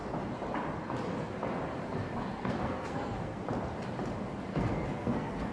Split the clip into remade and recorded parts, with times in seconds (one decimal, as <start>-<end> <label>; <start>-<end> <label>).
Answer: 0.0-2.4 recorded; 2.4-3.4 remade; 3.4-4.5 recorded; 4.5-5.5 remade